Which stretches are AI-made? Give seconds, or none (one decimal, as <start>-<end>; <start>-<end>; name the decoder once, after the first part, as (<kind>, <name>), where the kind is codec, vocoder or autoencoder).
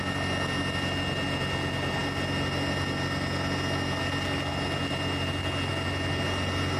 none